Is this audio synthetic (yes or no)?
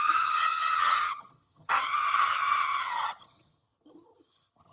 yes